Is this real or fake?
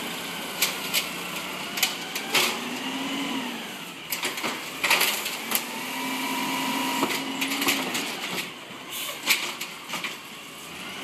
real